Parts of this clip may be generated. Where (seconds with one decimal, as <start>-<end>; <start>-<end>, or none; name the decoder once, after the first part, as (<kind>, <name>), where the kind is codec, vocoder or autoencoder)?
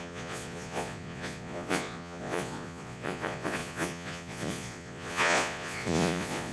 0.0-6.5 (vocoder, Vocos)